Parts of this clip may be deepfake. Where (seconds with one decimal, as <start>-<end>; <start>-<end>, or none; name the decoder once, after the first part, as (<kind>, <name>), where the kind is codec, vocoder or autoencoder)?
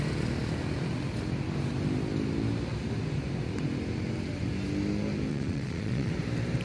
5.3-6.1 (vocoder, Vocos)